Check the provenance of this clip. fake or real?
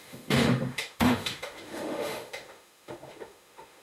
fake